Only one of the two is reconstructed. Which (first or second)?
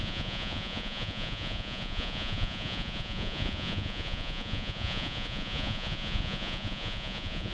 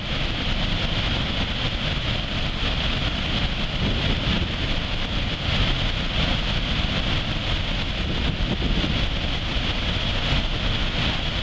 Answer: first